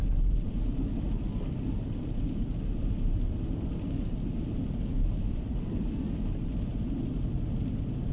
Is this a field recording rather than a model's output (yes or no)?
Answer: yes